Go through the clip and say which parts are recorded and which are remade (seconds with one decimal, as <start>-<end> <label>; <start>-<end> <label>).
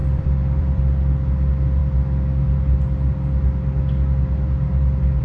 0.0-0.8 remade; 0.8-5.2 recorded